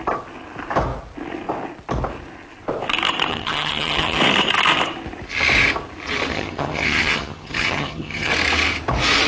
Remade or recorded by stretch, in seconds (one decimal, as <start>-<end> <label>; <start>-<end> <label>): 0.0-3.3 recorded; 3.3-4.2 remade; 4.2-6.3 recorded; 6.3-8.3 remade; 8.3-9.3 recorded